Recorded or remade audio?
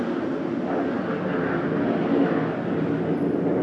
recorded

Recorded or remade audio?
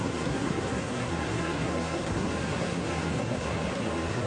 remade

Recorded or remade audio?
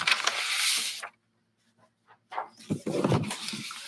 recorded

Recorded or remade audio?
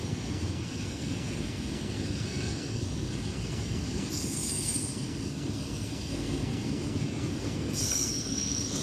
remade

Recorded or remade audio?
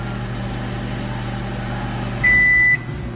recorded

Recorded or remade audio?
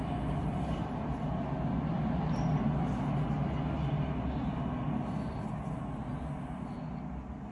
recorded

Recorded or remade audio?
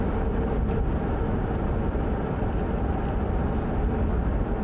recorded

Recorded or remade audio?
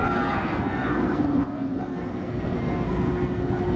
remade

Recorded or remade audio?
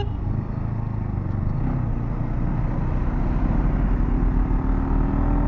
recorded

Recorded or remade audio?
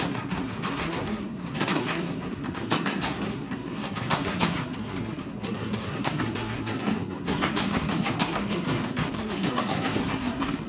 remade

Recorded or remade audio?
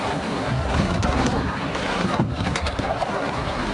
remade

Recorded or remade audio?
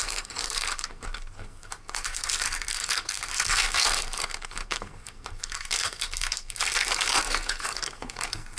remade